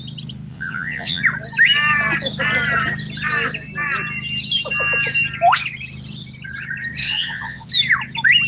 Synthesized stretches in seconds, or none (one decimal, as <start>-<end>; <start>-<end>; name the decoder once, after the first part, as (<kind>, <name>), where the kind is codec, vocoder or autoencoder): 0.5-1.2 (vocoder, Vocos); 7.0-7.7